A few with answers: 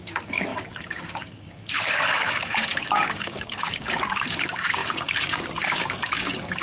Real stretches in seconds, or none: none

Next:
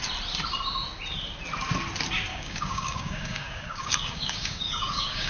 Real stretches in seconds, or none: 0.0-2.3

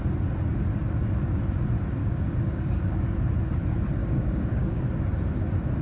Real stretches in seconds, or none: 0.0-2.0; 3.2-4.0; 4.8-5.8